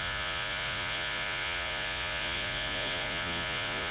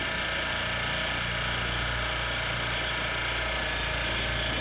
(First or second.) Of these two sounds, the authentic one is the second